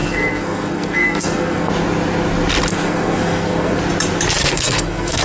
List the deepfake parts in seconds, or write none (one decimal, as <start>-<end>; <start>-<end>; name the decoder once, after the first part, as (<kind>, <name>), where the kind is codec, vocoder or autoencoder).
0.0-1.7 (codec, SNAC); 2.7-3.8; 4.4-5.2